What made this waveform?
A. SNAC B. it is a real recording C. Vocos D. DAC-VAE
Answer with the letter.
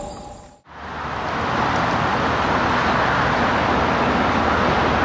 B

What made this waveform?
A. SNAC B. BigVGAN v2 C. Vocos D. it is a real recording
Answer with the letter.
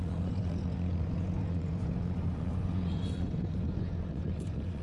C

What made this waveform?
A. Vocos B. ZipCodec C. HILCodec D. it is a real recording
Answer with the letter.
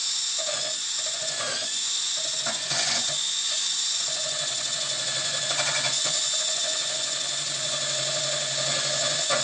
A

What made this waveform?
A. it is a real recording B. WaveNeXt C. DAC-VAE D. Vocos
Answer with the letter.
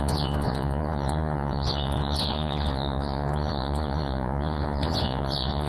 D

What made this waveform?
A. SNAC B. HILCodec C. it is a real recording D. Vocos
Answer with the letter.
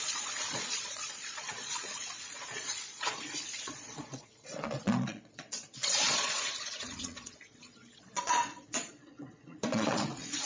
D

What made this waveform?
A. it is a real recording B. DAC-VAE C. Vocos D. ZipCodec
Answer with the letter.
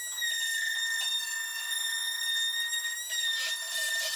A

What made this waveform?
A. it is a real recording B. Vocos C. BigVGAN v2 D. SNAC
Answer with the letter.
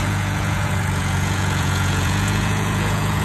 B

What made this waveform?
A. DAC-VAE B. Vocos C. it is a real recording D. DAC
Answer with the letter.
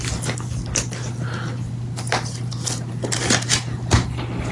C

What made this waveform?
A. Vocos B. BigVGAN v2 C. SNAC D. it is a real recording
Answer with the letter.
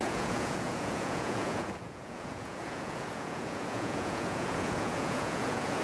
A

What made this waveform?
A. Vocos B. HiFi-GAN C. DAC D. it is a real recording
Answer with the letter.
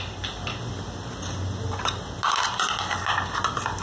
D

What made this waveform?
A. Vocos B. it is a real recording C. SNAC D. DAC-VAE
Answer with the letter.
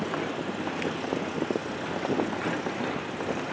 B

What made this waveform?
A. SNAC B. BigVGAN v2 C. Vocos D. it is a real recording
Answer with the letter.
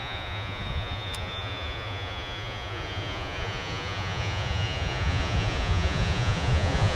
C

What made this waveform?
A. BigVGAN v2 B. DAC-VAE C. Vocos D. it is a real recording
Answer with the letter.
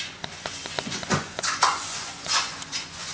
C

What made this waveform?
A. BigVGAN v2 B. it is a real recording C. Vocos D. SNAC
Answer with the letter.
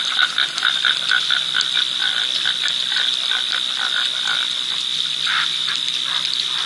B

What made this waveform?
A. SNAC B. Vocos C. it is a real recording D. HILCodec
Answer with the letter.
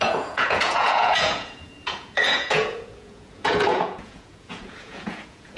B